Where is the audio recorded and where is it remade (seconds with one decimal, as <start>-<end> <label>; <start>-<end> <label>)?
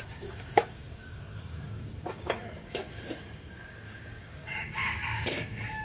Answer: 0.0-5.8 remade